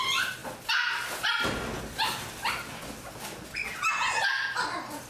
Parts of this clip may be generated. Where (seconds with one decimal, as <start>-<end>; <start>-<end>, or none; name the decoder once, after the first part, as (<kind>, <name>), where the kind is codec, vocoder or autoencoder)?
none